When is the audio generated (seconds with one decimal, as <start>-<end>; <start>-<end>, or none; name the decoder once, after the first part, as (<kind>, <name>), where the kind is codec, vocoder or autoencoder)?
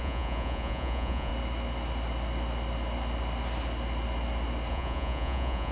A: 0.0-1.3 (vocoder, Vocos); 4.7-5.7